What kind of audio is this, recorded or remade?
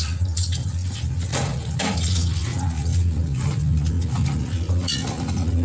remade